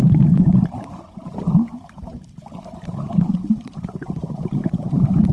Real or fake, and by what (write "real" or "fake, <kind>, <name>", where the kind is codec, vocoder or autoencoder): fake, vocoder, BigVGAN v2